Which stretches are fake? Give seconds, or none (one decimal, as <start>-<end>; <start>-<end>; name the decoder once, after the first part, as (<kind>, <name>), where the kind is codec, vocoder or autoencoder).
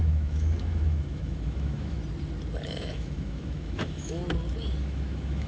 0.0-2.0 (autoencoder, DAC-VAE); 2.8-4.2; 4.8-5.5